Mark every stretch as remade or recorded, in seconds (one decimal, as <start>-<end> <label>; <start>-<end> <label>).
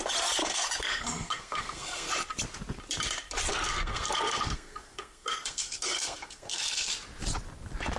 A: 0.0-0.4 recorded; 0.4-2.1 remade; 2.1-3.5 recorded; 3.5-6.9 remade; 6.9-8.0 recorded